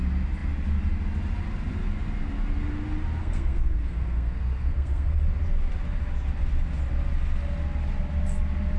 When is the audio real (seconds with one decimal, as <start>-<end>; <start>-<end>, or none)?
0.0-3.2; 5.2-8.8